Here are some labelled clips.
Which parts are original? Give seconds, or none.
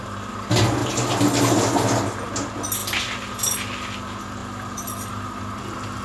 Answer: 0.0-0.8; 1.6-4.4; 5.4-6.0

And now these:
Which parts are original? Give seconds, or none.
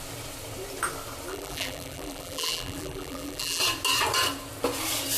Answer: 0.0-1.3; 3.6-5.2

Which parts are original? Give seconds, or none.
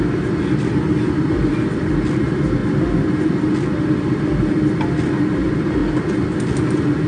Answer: 2.6-4.8; 5.8-6.6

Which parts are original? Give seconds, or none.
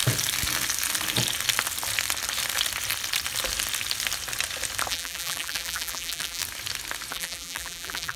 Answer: 0.0-4.9; 6.4-7.1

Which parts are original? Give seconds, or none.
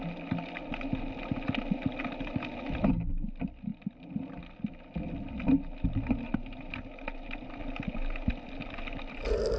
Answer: 0.0-9.6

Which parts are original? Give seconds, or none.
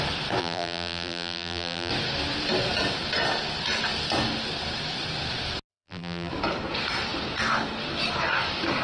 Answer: 0.0-0.4; 1.9-5.7; 6.3-8.8